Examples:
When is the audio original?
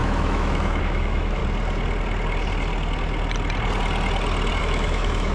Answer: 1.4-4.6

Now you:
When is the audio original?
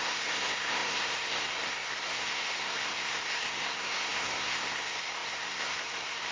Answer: none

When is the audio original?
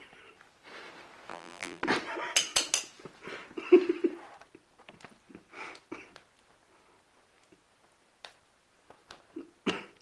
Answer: 0.0-1.3; 1.8-10.0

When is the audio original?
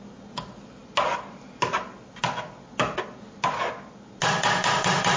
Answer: 0.0-5.2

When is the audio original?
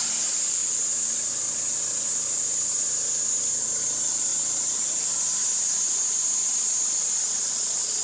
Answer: 0.0-8.0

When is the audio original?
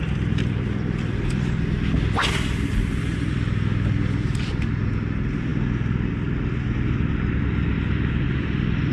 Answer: 0.0-8.9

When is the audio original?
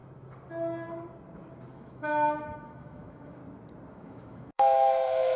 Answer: 0.0-1.7; 3.4-3.9